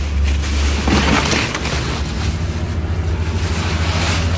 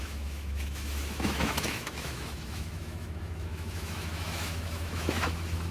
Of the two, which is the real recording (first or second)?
first